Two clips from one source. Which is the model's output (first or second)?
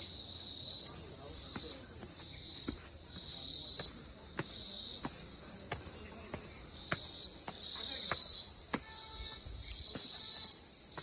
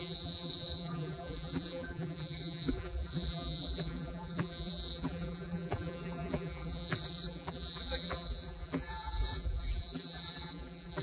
second